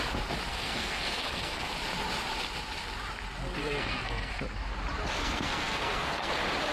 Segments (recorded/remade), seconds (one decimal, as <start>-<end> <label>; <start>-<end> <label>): 0.0-0.5 recorded; 0.5-1.7 remade; 1.7-3.6 recorded; 3.6-4.3 remade; 4.3-5.2 recorded; 5.2-6.3 remade; 6.3-6.7 recorded